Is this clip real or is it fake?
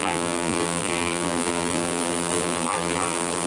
fake